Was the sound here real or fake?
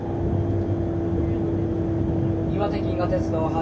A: real